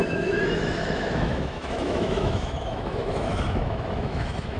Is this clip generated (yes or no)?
yes